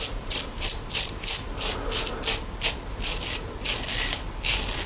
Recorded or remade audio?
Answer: recorded